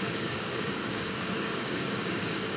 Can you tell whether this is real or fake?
fake